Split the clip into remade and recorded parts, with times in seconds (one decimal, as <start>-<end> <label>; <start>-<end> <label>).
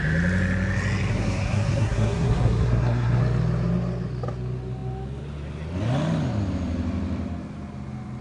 0.0-1.1 recorded; 1.1-3.2 remade; 3.2-8.2 recorded